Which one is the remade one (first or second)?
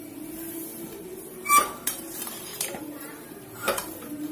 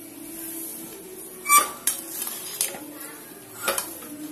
first